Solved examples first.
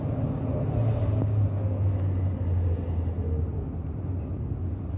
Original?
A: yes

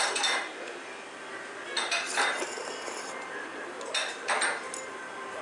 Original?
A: yes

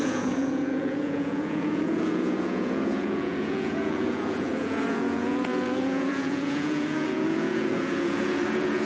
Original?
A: no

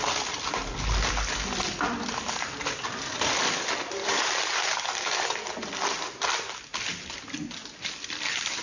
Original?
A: yes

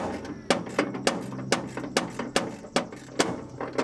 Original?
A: yes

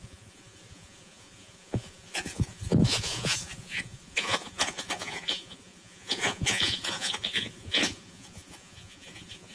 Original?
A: no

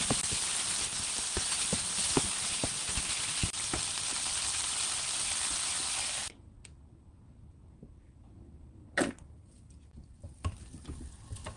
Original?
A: yes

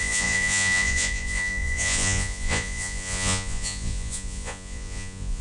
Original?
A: no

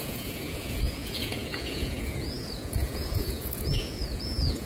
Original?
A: no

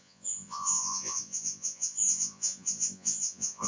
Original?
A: no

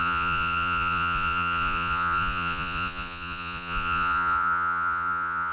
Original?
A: no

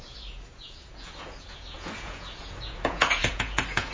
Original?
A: no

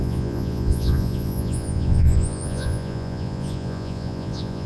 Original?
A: no